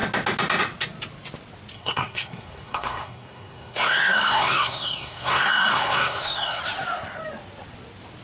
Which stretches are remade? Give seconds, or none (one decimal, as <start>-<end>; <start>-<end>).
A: 1.7-6.6